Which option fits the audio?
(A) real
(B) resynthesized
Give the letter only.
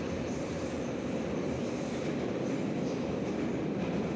B